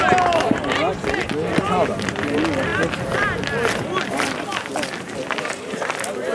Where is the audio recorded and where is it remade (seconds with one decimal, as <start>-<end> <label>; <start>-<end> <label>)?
0.0-6.3 recorded